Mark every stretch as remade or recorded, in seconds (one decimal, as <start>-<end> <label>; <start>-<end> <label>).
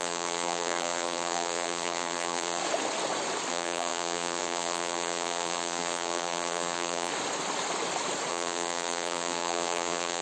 0.0-2.6 remade; 2.6-3.5 recorded; 3.5-7.1 remade; 7.1-8.3 recorded; 8.3-10.2 remade